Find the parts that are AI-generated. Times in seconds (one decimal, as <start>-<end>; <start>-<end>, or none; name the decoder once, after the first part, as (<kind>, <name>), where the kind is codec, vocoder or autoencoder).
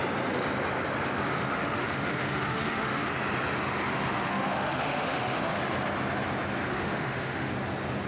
1.3-3.1 (autoencoder, DAC-VAE); 3.9-5.6; 6.7-7.5